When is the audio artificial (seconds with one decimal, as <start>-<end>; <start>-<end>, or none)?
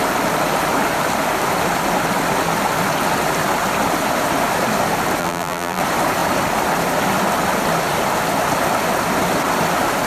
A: 5.2-5.8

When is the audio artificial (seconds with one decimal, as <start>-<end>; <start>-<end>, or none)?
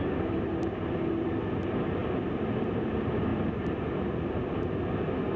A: 2.0-2.7; 3.3-4.6